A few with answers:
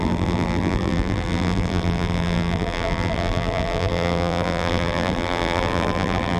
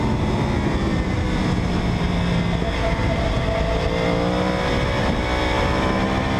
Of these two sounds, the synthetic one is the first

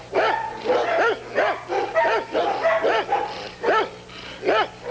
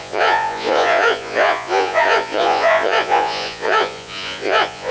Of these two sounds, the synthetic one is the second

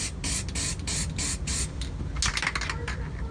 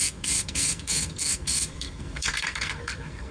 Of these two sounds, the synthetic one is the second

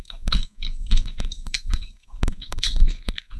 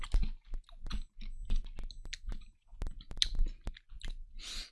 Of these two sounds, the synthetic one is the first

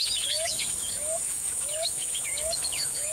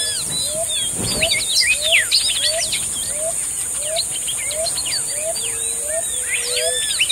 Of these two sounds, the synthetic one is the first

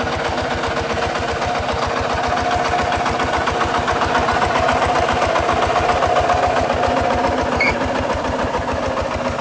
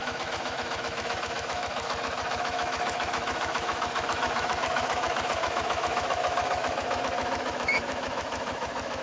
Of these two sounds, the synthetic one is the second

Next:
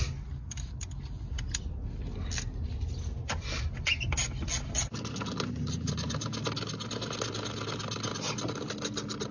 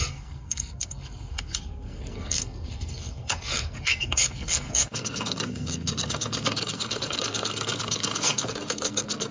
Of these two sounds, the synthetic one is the second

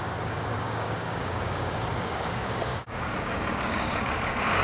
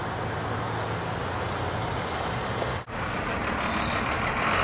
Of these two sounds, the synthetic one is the first